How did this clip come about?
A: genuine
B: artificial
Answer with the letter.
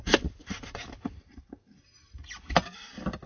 A